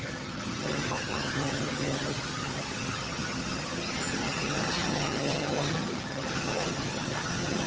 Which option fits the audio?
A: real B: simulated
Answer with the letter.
B